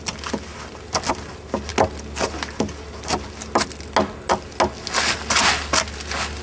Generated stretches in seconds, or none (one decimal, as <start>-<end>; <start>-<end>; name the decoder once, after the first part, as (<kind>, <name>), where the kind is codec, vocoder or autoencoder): none